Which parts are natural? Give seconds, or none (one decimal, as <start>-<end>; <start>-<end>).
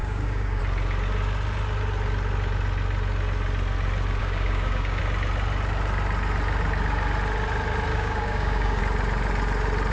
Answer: 0.6-4.2; 5.0-7.9; 8.8-9.9